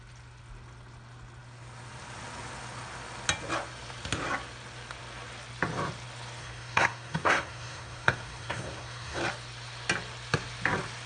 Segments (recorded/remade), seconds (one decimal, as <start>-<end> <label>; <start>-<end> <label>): 0.0-6.4 recorded; 6.4-9.2 remade; 9.2-11.1 recorded